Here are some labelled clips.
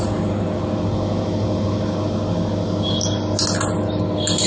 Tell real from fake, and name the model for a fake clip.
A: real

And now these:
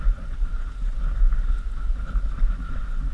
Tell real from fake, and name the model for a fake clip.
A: real